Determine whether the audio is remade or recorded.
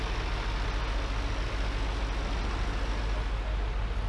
recorded